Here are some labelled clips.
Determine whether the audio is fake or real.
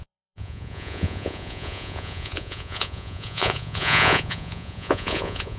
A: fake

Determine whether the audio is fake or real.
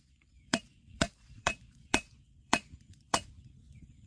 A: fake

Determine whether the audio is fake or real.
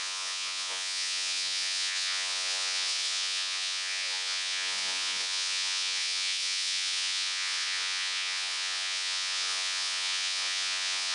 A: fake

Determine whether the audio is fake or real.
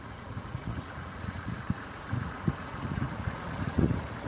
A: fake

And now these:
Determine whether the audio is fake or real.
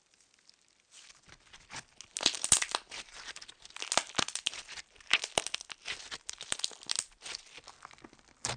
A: real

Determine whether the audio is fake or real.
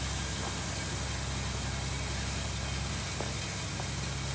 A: real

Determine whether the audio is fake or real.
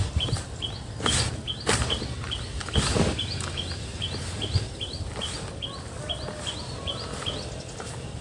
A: real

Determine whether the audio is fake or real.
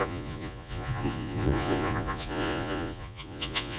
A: fake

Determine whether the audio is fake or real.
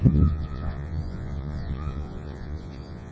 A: fake